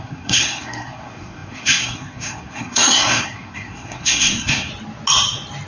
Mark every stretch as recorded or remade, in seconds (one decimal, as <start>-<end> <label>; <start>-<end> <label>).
0.0-4.7 remade; 4.7-5.7 recorded